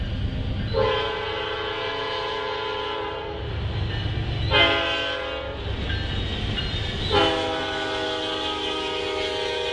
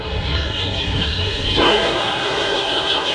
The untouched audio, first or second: first